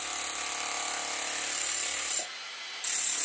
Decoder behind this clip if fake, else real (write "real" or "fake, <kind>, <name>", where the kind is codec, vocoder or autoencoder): real